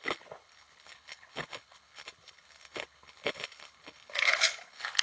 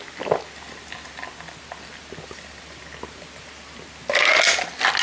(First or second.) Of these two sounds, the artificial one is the first